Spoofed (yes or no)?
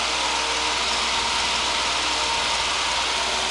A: no